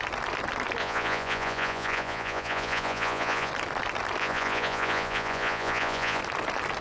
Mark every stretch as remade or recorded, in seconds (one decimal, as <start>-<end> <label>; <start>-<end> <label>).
0.0-0.8 recorded; 0.8-3.5 remade; 3.5-4.2 recorded; 4.2-6.2 remade; 6.2-6.8 recorded